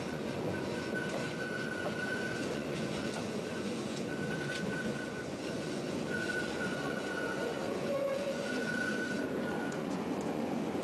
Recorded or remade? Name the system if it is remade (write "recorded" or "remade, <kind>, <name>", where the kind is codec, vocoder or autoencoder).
remade, vocoder, Vocos